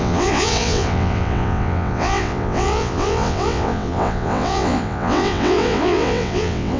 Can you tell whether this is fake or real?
fake